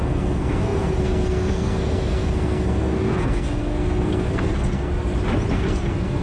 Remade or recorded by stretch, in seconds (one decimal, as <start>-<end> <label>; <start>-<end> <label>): 0.0-4.9 remade; 4.9-5.5 recorded; 5.5-6.2 remade